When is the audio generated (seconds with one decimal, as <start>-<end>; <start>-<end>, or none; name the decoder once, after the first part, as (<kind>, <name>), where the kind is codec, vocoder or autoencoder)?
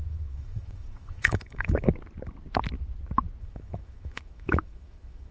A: 0.0-1.9 (autoencoder, DAC-VAE); 3.4-5.3